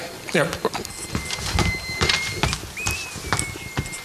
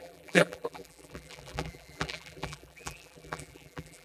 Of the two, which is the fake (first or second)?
second